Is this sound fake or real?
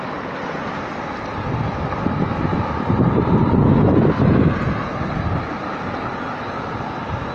real